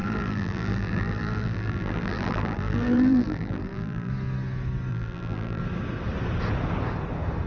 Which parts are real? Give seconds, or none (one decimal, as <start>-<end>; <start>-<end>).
4.1-4.9; 5.6-7.5